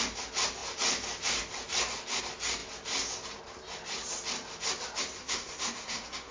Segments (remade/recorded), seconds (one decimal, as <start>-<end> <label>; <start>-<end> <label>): 0.0-5.2 recorded; 5.2-6.3 remade